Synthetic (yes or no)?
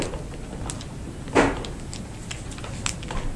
no